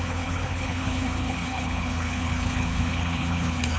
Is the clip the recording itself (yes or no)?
no